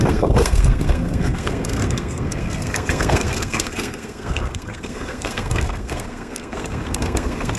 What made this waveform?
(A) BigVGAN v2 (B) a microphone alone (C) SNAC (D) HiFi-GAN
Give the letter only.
C